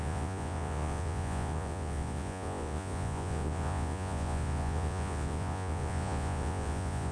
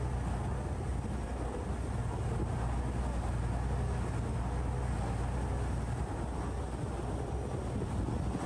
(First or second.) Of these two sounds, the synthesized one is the first